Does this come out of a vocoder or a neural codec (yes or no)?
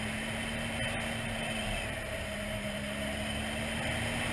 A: no